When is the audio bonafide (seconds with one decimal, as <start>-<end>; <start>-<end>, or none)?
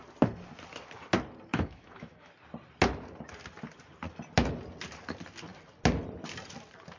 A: 0.0-1.5; 2.3-7.0